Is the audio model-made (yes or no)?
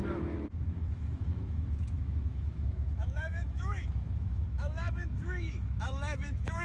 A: yes